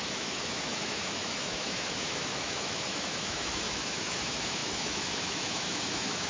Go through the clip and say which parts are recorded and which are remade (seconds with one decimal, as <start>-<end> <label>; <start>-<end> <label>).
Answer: 0.0-6.3 remade